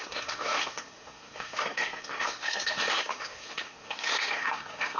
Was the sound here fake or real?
fake